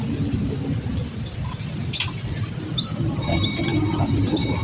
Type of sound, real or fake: real